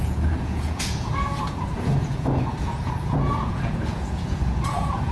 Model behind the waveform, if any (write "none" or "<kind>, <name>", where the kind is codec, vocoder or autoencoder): vocoder, Vocos